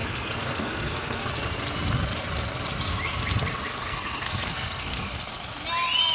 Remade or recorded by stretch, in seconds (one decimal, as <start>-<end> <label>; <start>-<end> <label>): 0.0-1.2 remade; 1.2-3.8 recorded; 3.8-5.3 remade; 5.3-6.1 recorded